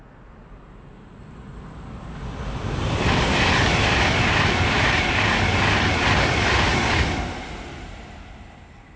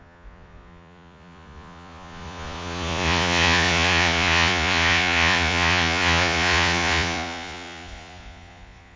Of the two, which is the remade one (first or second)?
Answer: second